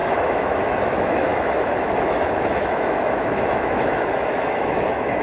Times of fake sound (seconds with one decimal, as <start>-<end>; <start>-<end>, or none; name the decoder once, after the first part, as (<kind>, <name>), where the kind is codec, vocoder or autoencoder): 0.0-5.2 (autoencoder, DAC-VAE)